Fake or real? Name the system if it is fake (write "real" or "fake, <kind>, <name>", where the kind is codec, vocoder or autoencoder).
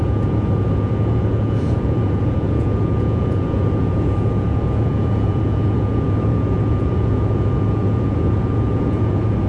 fake, vocoder, Vocos